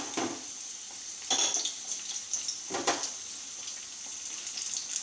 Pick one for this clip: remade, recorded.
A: recorded